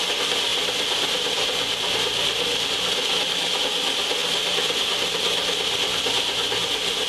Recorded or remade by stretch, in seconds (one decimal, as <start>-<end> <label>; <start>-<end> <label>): 0.0-0.5 recorded; 0.5-3.6 remade; 3.6-4.2 recorded; 4.2-4.8 remade; 4.8-7.1 recorded